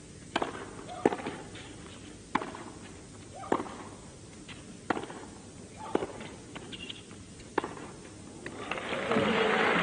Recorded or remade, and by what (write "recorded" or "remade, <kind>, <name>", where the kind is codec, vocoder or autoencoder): recorded